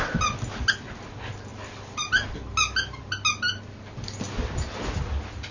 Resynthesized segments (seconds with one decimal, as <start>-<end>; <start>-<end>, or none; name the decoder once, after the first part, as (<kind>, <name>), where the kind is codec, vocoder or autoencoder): none